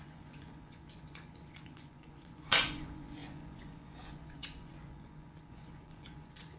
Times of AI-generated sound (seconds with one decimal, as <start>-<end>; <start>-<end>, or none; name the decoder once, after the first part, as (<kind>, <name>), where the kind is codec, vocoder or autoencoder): 0.0-6.6 (vocoder, Vocos)